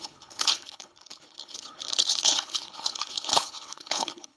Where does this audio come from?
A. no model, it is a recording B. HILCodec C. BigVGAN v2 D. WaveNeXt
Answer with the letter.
B